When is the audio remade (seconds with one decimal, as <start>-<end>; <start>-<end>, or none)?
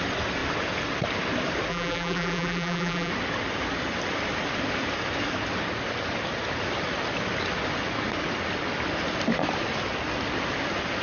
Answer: 1.7-3.1